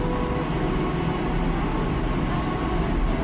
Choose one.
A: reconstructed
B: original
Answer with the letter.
B